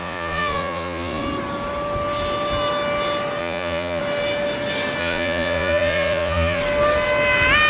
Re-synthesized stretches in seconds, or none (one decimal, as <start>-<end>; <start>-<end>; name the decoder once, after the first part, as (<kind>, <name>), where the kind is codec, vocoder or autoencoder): 0.0-1.2 (vocoder, Vocos); 3.4-4.0; 5.0-6.6